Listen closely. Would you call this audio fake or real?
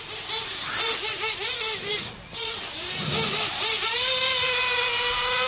real